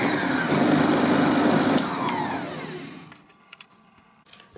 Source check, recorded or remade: recorded